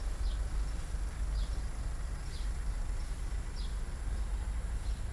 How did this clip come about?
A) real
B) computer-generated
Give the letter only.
A